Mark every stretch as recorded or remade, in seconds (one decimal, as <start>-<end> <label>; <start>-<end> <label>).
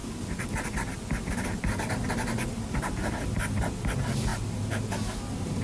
0.0-5.6 recorded